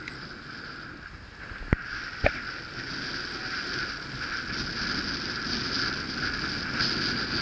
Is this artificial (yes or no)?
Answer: no